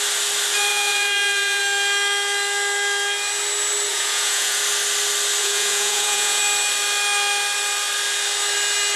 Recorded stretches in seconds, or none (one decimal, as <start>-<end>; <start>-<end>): 0.0-0.7; 1.6-3.9; 4.6-5.4; 6.4-9.0